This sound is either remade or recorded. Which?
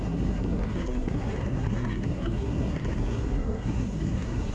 remade